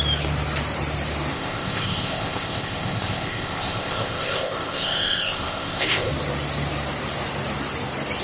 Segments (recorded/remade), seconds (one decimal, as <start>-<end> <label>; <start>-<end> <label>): 0.0-1.3 recorded; 1.3-6.1 remade; 6.1-8.2 recorded